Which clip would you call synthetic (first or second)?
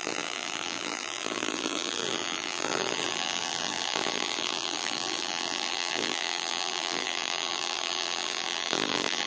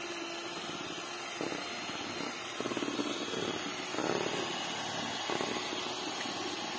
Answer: first